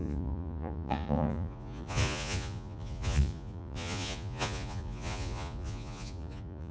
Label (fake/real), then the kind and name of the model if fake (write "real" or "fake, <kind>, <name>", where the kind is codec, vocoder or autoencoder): fake, vocoder, Vocos